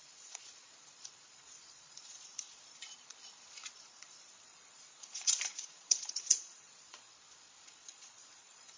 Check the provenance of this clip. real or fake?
fake